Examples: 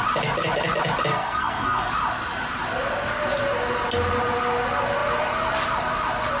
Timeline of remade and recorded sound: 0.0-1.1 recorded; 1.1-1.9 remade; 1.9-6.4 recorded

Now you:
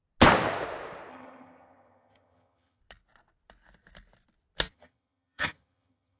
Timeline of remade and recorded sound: 0.0-1.1 recorded; 1.1-2.8 remade; 2.8-4.7 recorded; 4.7-6.2 remade

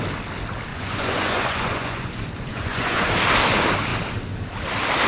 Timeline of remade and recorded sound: 0.0-0.7 recorded; 0.7-2.1 remade; 2.1-2.5 recorded; 2.5-3.1 remade; 3.1-5.1 recorded

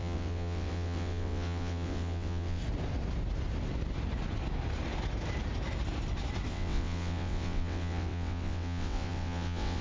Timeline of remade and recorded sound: 0.0-2.6 remade; 2.6-6.5 recorded; 6.5-9.8 remade